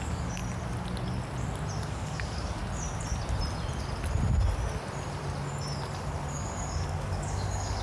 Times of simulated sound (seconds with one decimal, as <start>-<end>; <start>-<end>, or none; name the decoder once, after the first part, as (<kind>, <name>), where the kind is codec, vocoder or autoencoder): 0.0-0.4 (codec, DAC); 1.8-2.6; 6.3-7.8